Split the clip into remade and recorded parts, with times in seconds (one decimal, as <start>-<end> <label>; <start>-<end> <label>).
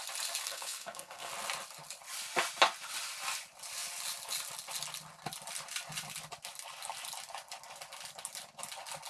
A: 0.0-0.4 recorded; 0.4-1.3 remade; 1.3-9.1 recorded